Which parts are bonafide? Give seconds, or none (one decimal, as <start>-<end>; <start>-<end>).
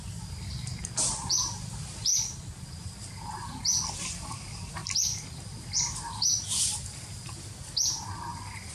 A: 2.1-3.0